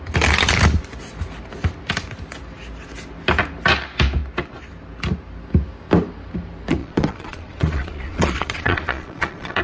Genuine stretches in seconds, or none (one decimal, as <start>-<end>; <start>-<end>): 0.0-6.8

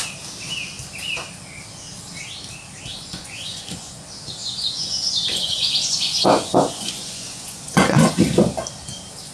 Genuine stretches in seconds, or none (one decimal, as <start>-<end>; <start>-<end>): 0.0-2.9; 4.0-4.4; 8.1-9.3